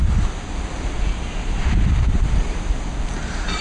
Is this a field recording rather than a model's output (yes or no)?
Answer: no